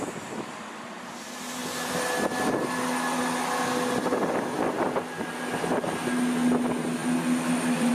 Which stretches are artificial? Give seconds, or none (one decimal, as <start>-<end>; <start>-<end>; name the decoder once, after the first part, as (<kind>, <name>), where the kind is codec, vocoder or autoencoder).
7.0-7.9 (vocoder, BigVGAN v2)